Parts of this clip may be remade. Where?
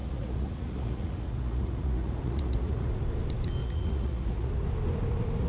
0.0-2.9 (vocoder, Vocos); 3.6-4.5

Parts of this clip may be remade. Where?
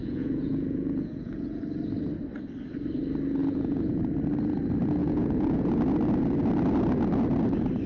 0.0-1.6 (vocoder, Vocos); 3.4-4.1; 5.0-5.8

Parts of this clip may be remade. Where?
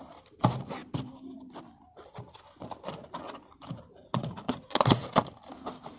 4.0-4.7 (vocoder, Vocos)